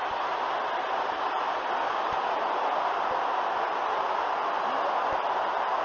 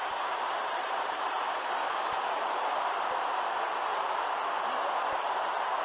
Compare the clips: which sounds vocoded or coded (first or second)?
second